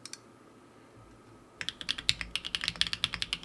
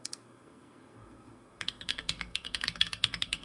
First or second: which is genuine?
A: first